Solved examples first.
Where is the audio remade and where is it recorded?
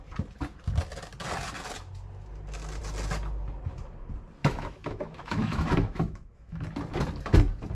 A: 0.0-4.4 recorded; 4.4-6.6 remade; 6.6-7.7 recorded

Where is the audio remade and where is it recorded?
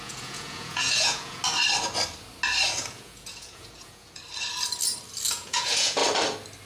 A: 0.0-1.4 remade; 1.4-2.9 recorded; 2.9-4.2 remade; 4.2-5.3 recorded; 5.3-6.0 remade; 6.0-6.7 recorded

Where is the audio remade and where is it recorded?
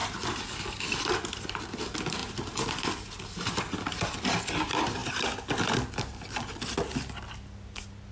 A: 0.0-5.0 remade; 5.0-6.3 recorded; 6.3-6.9 remade; 6.9-8.1 recorded